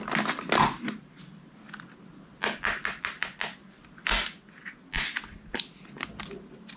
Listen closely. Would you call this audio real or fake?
real